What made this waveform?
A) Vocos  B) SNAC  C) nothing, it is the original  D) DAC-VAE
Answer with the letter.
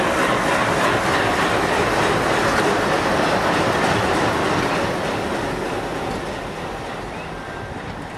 C